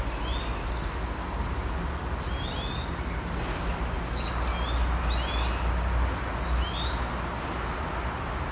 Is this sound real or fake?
real